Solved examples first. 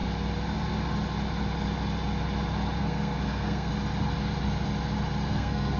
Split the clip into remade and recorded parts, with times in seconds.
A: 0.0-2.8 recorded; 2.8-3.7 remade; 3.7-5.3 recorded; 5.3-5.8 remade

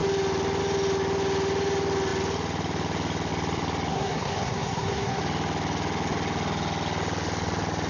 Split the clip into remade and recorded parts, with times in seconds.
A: 0.0-3.9 recorded; 3.9-5.2 remade; 5.2-7.9 recorded